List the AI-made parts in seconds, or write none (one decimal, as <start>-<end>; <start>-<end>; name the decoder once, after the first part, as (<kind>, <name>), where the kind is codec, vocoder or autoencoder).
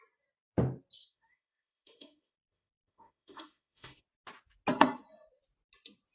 1.0-4.0 (autoencoder, DAC-VAE)